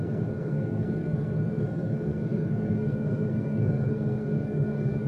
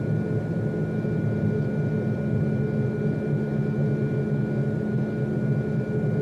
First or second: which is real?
second